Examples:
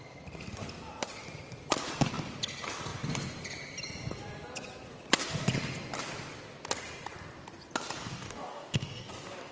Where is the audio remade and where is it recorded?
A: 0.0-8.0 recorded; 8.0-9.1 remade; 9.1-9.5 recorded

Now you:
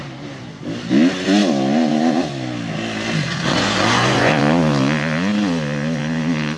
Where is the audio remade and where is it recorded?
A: 0.0-3.3 recorded; 3.3-4.4 remade; 4.4-6.6 recorded